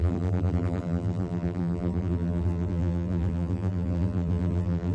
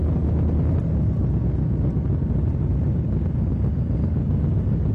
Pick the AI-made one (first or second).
first